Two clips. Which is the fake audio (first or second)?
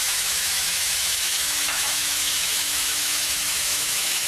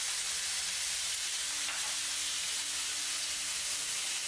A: first